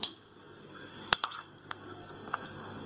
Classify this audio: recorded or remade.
remade